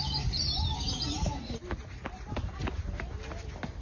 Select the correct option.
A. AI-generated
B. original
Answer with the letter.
B